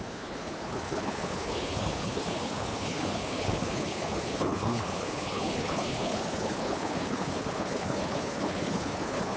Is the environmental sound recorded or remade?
remade